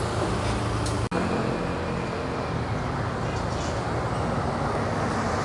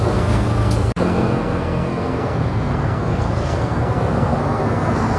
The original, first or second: first